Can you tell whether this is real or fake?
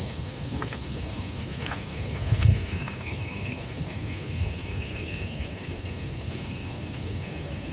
fake